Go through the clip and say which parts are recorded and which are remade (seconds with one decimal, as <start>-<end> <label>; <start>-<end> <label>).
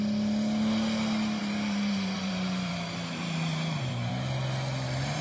0.0-1.4 recorded; 1.4-4.1 remade; 4.1-5.2 recorded